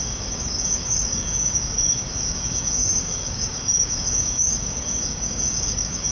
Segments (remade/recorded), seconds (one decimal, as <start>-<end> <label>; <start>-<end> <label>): 0.0-6.1 remade